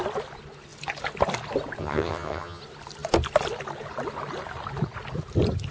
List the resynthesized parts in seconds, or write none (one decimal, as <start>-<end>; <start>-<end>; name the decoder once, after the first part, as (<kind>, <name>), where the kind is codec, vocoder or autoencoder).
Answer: 1.8-2.6 (vocoder, HiFi-GAN)